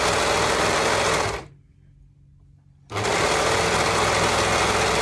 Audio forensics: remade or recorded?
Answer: recorded